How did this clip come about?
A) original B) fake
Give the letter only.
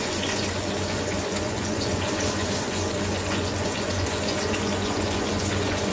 B